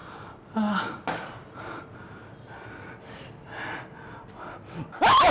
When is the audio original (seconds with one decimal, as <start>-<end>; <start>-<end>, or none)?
0.0-5.3